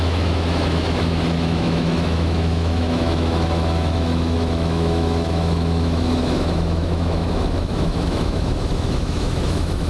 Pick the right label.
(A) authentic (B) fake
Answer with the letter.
B